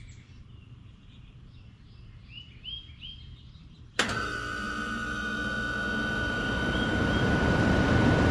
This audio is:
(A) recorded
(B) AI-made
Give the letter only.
B